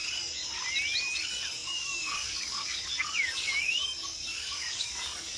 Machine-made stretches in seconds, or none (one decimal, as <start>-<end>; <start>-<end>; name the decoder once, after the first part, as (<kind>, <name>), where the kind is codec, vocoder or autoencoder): 0.0-0.4 (codec, DAC); 1.1-5.4